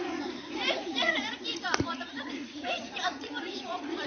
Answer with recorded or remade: remade